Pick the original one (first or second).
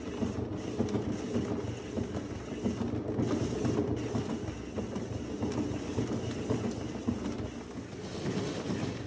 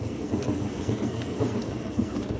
first